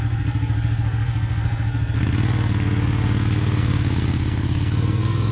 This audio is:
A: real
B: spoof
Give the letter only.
B